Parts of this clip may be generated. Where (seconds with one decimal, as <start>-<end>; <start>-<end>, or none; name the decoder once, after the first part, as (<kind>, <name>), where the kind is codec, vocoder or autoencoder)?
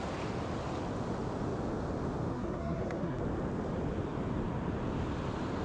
2.3-3.2 (codec, SNAC)